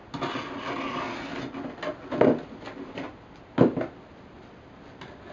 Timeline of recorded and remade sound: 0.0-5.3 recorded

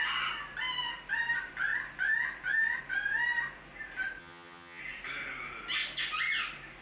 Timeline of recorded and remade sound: 0.0-4.2 recorded; 4.2-4.8 remade; 4.8-6.8 recorded

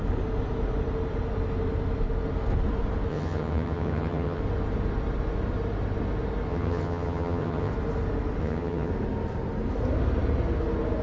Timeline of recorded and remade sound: 0.0-3.1 recorded; 3.1-4.4 remade; 4.4-6.5 recorded; 6.5-7.7 remade; 7.7-8.4 recorded; 8.4-8.9 remade; 8.9-11.0 recorded